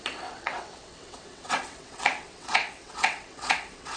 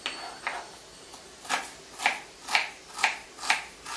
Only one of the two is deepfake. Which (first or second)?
first